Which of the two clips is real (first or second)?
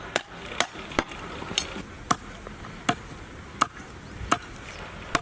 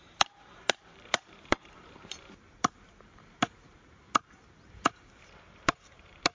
first